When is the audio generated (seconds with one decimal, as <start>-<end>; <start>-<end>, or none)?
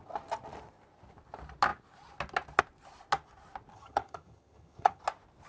3.7-5.0